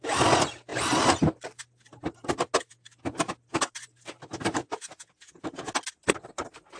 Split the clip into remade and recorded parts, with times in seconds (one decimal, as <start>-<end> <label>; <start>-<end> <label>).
0.0-4.6 recorded; 4.6-5.7 remade; 5.7-6.8 recorded